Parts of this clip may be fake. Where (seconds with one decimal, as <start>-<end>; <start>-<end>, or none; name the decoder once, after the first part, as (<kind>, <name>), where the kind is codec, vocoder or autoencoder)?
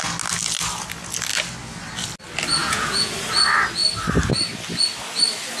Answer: 2.6-3.1 (vocoder, Vocos)